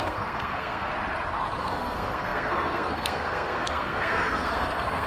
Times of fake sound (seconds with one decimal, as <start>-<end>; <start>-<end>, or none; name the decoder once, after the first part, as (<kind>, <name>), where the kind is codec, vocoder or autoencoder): 0.0-0.9 (codec, SNAC); 1.6-5.1